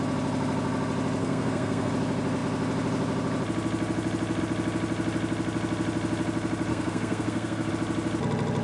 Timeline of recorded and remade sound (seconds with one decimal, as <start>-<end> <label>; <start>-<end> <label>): 0.0-1.2 recorded; 1.2-1.9 remade; 1.9-6.7 recorded; 6.7-7.7 remade; 7.7-8.6 recorded